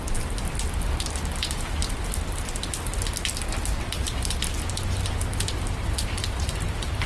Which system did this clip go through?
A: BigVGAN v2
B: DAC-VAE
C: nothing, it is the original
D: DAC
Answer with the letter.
C